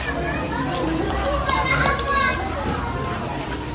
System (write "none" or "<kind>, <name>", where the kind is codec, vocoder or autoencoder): none